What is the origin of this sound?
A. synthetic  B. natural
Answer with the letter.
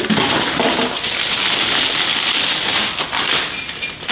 B